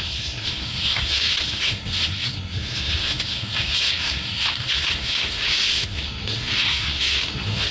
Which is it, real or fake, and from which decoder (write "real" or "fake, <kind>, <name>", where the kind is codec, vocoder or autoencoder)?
fake, codec, SNAC